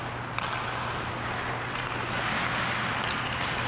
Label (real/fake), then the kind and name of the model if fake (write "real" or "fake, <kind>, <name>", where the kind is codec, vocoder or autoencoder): real